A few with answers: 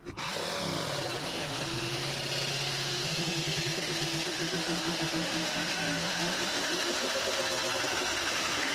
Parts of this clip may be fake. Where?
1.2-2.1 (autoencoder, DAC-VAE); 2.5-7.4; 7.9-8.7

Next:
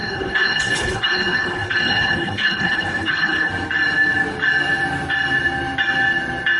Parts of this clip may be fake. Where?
0.0-3.5 (codec, HILCodec)

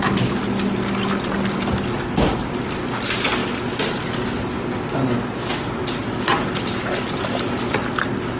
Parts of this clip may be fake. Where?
none

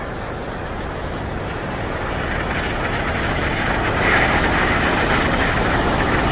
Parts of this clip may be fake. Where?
0.4-4.2 (vocoder, BigVGAN v2)

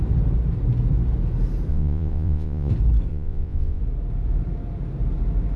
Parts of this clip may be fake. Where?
1.7-2.7 (vocoder, Vocos); 3.1-3.8

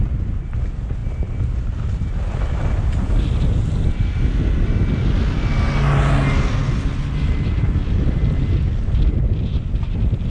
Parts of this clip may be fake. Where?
none

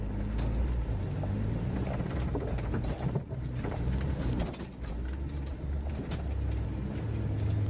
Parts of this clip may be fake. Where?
0.6-4.9 (vocoder, BigVGAN v2); 5.5-6.1

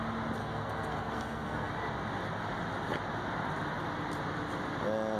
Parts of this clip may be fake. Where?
0.4-1.7 (codec, SNAC)